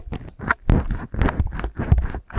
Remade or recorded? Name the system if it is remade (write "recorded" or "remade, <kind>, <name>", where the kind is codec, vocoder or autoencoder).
remade, vocoder, BigVGAN v2